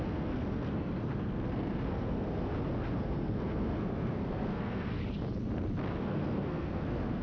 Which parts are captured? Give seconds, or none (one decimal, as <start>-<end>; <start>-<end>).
2.5-3.0; 5.0-5.9